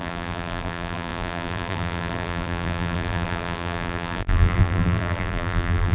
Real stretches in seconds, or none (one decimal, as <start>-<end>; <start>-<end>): none